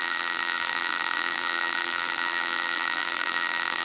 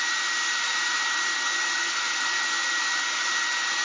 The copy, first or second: first